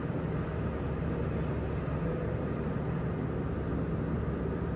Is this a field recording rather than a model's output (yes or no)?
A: yes